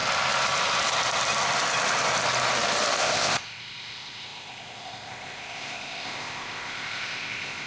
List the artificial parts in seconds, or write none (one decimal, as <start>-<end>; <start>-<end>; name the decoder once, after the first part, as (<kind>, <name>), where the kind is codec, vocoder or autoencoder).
3.0-7.7 (codec, ZipCodec)